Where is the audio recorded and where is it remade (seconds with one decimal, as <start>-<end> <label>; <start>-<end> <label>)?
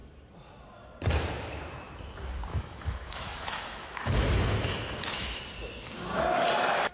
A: 0.0-2.5 recorded; 2.5-5.4 remade; 5.4-6.9 recorded